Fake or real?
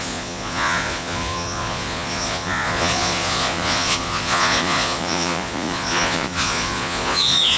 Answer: fake